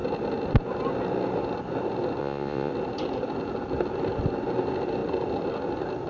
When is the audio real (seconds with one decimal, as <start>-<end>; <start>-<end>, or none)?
0.0-2.2; 2.7-6.1